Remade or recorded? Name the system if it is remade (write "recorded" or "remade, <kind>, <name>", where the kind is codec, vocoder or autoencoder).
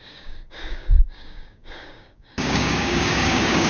remade, codec, DAC